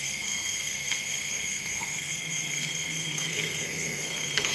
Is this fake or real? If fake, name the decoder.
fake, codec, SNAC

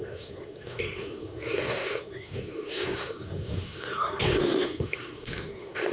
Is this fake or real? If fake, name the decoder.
fake, codec, SNAC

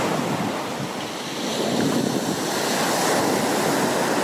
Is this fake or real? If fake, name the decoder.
real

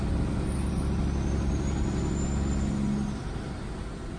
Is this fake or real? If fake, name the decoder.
real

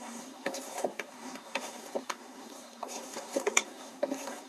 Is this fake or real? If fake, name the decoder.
fake, codec, SNAC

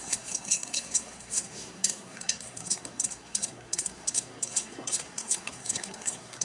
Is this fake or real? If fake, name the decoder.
fake, codec, SNAC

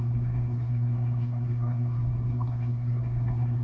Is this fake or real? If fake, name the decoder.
fake, codec, SNAC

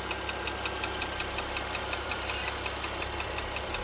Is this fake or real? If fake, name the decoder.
real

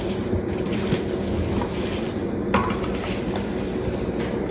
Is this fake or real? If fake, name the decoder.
real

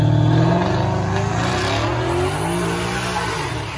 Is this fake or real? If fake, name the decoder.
real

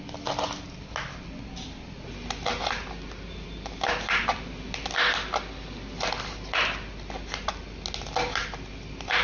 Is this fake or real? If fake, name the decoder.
real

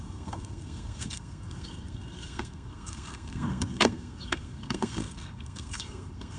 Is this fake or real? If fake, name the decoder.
fake, codec, SNAC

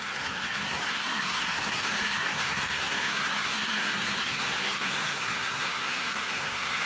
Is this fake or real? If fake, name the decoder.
fake, codec, SNAC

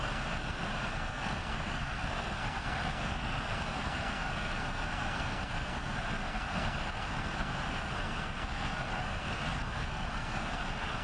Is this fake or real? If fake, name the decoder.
fake, codec, SNAC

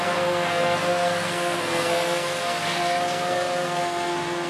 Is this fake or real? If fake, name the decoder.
fake, codec, SNAC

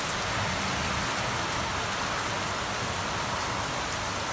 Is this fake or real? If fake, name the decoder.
real